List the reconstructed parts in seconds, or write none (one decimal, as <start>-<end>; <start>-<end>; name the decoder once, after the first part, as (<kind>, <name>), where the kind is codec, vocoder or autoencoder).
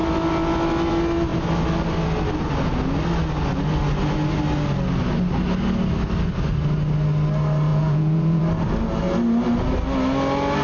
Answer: 7.7-8.4 (vocoder, Vocos)